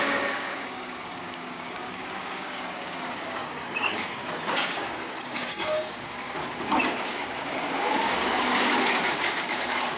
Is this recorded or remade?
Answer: remade